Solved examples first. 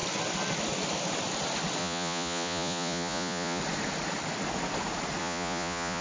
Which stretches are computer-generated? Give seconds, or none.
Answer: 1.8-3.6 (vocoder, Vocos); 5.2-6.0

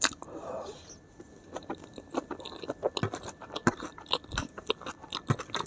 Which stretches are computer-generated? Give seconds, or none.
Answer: none

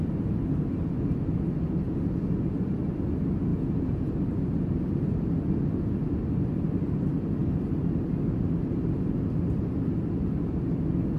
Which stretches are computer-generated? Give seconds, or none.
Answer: 3.5-4.1 (vocoder, Vocos)

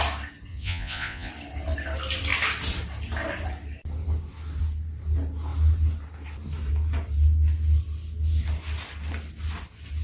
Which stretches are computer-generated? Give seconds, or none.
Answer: 0.5-1.3 (vocoder, Vocos)

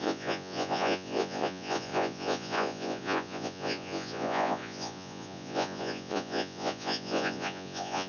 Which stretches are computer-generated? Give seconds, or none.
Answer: 0.0-8.1 (vocoder, Vocos)